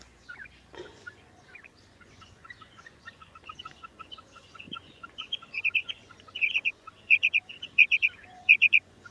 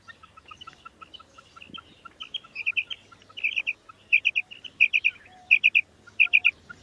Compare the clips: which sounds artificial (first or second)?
first